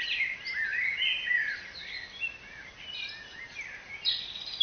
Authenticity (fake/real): real